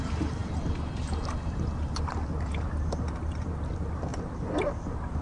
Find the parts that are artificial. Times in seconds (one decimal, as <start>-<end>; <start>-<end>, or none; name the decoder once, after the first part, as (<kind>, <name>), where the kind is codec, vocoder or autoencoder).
none